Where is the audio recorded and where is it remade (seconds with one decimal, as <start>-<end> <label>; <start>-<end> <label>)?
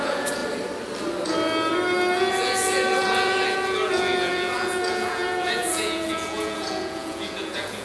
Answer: 0.0-0.4 remade; 0.4-2.3 recorded; 2.3-7.8 remade